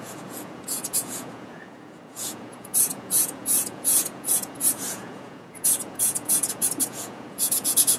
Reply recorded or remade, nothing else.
remade